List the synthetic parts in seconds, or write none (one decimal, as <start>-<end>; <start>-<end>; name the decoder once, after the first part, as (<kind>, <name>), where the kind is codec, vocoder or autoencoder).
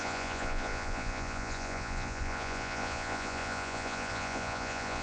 0.0-5.0 (vocoder, Vocos)